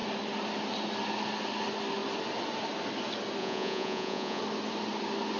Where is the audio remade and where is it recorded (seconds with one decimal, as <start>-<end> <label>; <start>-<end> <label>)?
0.0-3.4 recorded; 3.4-4.4 remade; 4.4-5.4 recorded